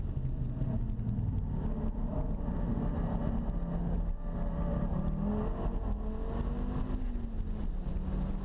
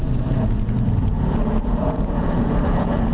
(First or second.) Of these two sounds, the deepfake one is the second